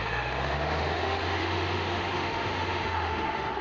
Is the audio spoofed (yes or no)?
yes